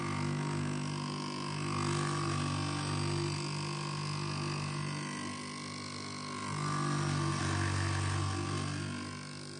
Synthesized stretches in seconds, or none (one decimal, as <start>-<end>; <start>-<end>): none